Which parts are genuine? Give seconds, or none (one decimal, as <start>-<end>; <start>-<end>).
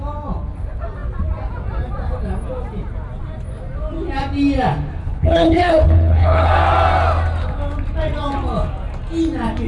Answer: 0.0-5.0; 6.5-9.7